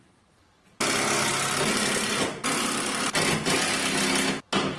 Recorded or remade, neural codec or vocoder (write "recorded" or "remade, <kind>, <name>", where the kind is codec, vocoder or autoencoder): recorded